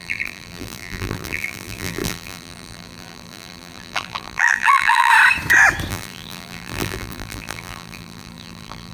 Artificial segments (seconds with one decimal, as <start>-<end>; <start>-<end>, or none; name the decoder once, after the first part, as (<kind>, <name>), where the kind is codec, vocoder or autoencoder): 0.0-5.1 (vocoder, BigVGAN v2); 5.9-8.9